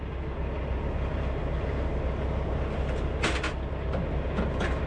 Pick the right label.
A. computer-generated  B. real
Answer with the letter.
B